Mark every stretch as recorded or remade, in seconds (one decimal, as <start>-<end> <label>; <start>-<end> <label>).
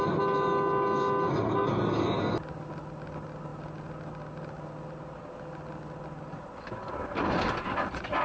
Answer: 0.0-8.2 recorded